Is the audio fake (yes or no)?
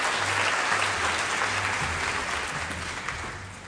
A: no